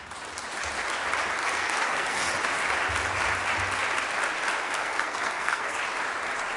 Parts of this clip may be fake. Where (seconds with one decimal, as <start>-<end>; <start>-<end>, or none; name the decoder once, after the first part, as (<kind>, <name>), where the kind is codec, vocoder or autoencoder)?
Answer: 1.4-2.3 (codec, SNAC); 4.6-5.8